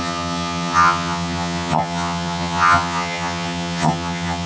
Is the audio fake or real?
fake